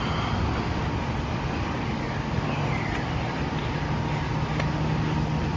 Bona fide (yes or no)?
yes